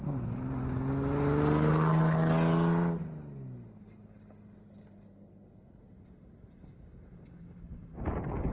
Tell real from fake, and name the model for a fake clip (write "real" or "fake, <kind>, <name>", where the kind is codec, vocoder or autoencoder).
real